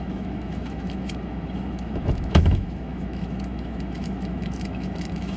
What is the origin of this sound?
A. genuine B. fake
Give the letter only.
B